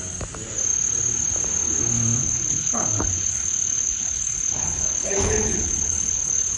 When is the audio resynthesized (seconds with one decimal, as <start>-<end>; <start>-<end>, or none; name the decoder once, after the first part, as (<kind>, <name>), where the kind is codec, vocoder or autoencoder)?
2.2-6.6 (codec, HILCodec)